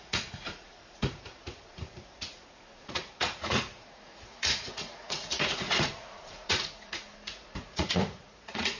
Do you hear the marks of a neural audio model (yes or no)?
yes